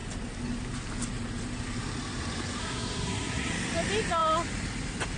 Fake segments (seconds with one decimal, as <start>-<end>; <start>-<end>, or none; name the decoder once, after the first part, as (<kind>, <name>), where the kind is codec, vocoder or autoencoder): 2.6-3.5 (codec, SNAC)